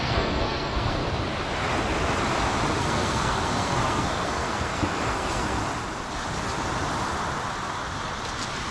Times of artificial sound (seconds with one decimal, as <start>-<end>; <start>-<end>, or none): 0.0-1.0; 2.8-5.6